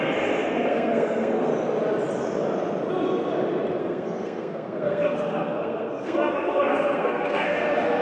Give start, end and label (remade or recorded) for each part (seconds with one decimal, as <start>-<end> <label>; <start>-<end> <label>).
0.0-1.5 remade; 1.5-3.8 recorded; 3.8-8.0 remade